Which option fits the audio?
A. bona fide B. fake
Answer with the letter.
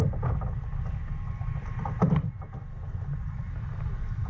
A